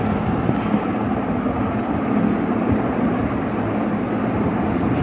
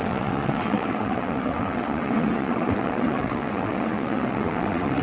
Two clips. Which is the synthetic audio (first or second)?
second